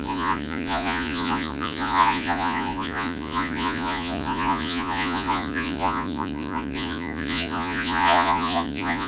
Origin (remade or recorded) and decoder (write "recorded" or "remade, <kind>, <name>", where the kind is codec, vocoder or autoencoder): remade, vocoder, Vocos